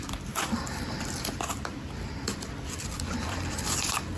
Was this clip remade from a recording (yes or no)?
yes